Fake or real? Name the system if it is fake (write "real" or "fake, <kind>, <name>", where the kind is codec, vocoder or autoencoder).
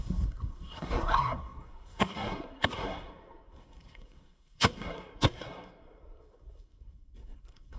fake, codec, SNAC